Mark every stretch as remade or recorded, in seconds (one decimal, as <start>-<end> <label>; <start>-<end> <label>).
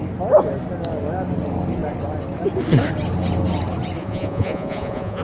0.0-4.0 recorded; 4.0-5.2 remade